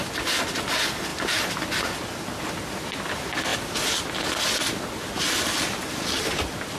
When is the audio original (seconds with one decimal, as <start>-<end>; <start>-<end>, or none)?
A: 0.0-6.8